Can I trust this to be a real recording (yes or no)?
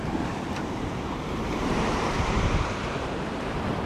no